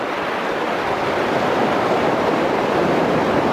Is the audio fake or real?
real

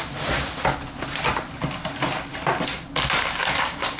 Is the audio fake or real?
real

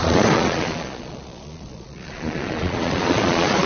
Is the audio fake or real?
fake